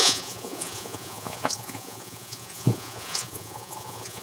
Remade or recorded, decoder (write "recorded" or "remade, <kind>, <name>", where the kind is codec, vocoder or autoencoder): remade, vocoder, Vocos